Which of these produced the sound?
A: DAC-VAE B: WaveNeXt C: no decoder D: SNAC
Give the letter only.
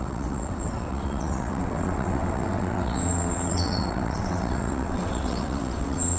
B